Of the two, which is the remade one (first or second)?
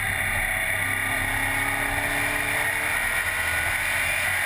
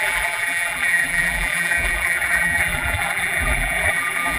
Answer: second